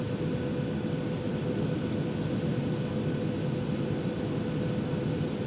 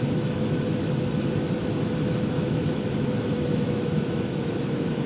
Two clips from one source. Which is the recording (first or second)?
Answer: first